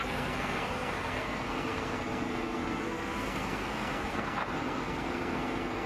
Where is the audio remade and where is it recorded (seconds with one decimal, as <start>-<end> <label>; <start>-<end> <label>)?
0.0-5.9 remade